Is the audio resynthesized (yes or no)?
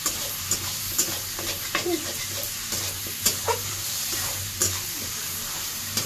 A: yes